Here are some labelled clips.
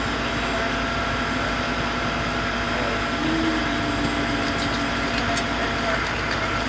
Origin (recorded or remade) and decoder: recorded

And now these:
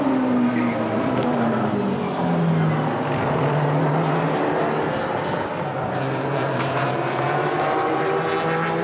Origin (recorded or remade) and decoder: recorded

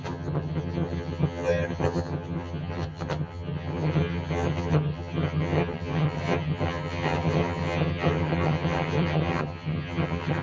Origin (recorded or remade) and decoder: remade, vocoder, HiFi-GAN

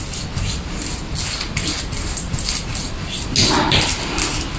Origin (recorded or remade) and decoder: recorded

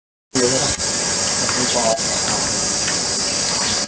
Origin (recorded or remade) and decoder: recorded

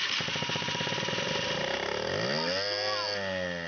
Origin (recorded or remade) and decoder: recorded